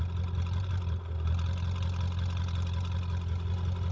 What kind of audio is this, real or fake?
real